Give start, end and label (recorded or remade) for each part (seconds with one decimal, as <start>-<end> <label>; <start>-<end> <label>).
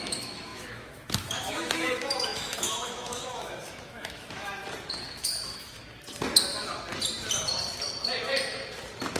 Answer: 0.0-4.6 remade; 4.6-5.1 recorded; 5.1-5.8 remade; 5.8-9.2 recorded